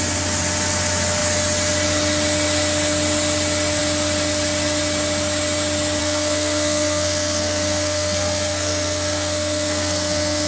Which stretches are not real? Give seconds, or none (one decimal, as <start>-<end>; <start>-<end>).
6.0-10.5